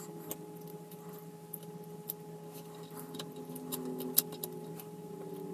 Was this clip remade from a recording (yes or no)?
no